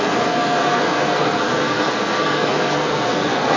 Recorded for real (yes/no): no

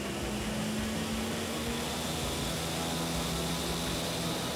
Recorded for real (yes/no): yes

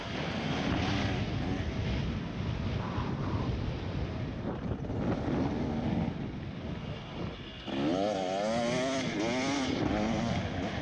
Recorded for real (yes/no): yes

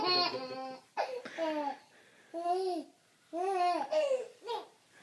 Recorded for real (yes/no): yes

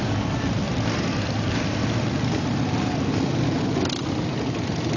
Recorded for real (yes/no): yes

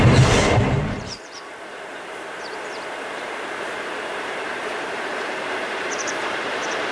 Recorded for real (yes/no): no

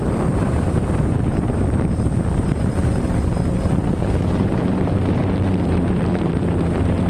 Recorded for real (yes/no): no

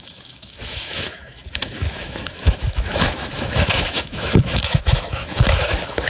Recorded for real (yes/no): no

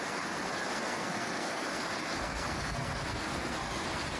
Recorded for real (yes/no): no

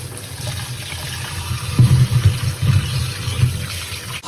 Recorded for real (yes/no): yes